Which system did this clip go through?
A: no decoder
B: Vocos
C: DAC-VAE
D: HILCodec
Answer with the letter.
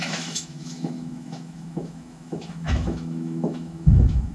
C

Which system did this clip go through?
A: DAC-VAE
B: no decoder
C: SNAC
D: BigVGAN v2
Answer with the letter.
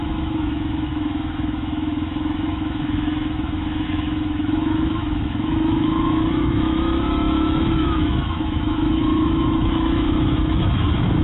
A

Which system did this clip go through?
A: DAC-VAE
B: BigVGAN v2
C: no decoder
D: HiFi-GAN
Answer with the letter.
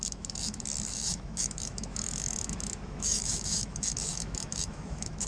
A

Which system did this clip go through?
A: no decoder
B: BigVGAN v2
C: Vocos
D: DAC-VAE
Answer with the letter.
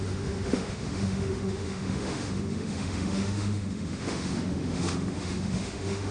D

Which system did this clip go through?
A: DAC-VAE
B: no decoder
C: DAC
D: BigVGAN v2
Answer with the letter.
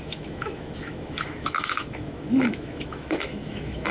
A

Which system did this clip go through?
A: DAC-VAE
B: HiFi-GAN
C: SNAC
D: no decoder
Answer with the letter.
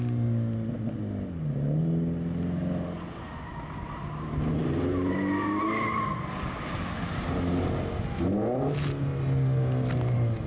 D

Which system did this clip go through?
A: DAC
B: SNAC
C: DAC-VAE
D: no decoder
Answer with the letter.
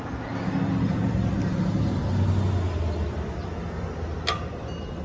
D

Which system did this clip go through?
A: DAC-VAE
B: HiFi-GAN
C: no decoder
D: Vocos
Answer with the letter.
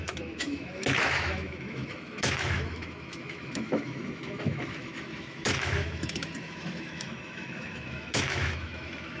A